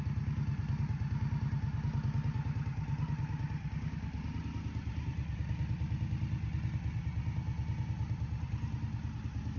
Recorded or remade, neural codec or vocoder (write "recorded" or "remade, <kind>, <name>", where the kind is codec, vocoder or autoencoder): recorded